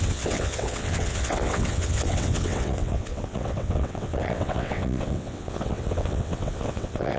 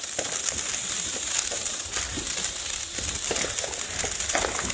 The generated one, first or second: first